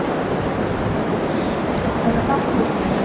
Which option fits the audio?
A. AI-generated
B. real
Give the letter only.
B